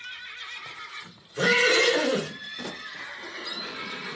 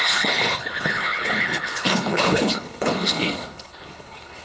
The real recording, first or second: first